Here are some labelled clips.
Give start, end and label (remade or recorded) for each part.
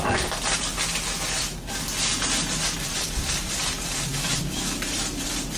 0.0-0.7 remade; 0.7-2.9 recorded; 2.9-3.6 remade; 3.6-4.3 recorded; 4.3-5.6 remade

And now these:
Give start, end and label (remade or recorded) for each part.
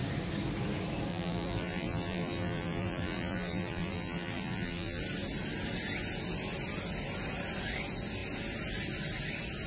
0.0-1.1 recorded; 1.1-5.0 remade; 5.0-9.7 recorded